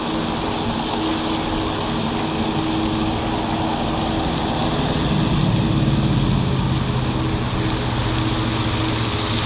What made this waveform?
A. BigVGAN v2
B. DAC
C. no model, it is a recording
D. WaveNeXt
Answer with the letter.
C